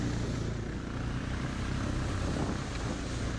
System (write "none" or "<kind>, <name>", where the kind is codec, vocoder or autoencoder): none